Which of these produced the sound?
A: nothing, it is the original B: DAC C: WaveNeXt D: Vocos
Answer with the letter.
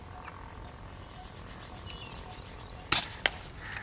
A